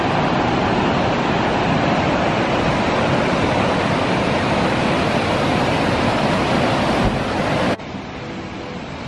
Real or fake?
real